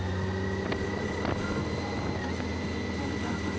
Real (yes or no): yes